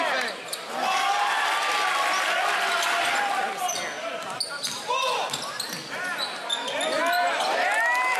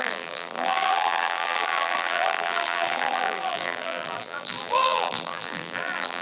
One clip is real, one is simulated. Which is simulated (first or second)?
second